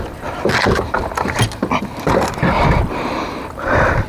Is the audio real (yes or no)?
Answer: yes